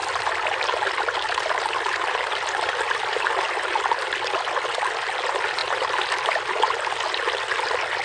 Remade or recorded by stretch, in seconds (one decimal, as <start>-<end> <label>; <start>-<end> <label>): 0.0-8.0 recorded